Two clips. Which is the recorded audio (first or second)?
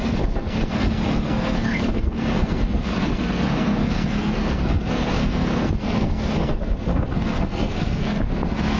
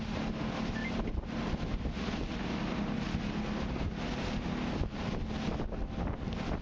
second